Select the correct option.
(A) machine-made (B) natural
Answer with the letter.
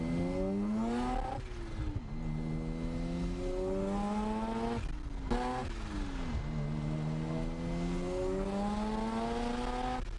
B